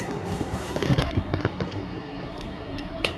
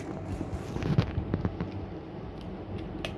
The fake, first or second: first